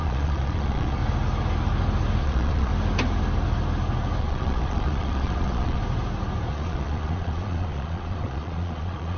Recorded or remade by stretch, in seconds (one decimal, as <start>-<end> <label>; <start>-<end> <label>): 0.0-1.0 remade; 1.0-2.2 recorded; 2.2-2.7 remade; 2.7-4.2 recorded; 4.2-5.8 remade; 5.8-6.5 recorded; 6.5-9.2 remade